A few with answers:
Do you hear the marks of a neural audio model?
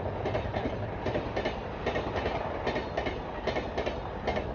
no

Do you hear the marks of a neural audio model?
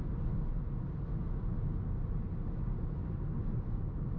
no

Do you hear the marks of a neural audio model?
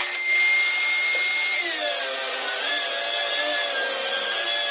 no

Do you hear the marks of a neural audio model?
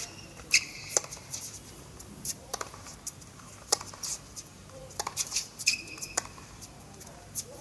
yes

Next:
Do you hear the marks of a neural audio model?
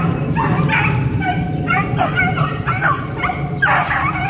no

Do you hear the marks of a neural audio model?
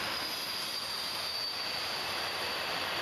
no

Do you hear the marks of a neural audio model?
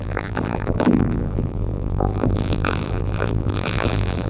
yes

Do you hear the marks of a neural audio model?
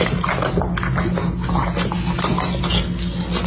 no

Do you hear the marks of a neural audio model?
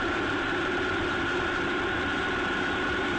yes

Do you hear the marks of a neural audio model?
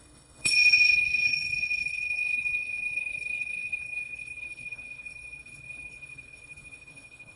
yes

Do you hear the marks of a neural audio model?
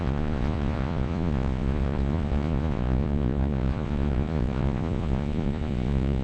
yes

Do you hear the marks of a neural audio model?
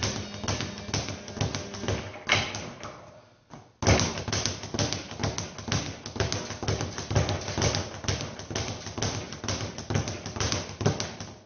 no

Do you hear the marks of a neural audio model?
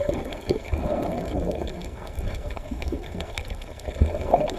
yes